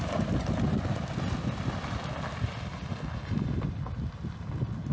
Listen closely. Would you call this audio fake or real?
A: real